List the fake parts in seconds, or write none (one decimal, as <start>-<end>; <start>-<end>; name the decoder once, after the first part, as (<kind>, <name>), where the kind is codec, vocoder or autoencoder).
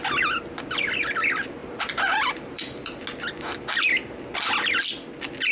1.6-3.0 (vocoder, BigVGAN v2)